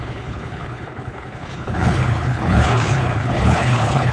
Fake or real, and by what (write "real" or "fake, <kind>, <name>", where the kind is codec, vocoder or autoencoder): fake, codec, HILCodec